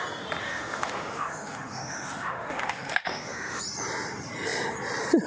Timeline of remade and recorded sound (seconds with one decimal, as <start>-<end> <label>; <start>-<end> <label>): 0.0-0.4 recorded; 0.4-3.6 remade; 3.6-5.3 recorded